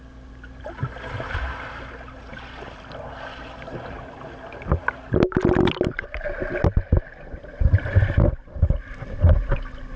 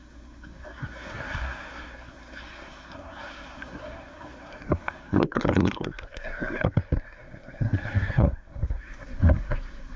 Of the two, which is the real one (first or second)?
first